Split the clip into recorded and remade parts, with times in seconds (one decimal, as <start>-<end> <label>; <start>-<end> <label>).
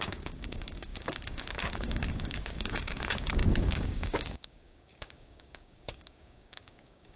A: 0.0-7.2 remade